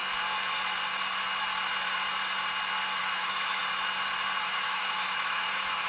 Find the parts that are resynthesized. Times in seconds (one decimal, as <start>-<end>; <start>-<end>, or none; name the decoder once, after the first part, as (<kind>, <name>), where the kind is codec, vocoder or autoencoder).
3.0-3.6 (autoencoder, DAC-VAE); 4.4-5.9